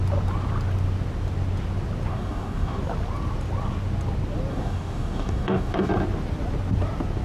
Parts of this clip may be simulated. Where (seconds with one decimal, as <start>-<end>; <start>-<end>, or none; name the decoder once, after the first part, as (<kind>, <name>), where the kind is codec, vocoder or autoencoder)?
2.1-2.8 (codec, DAC); 4.5-5.9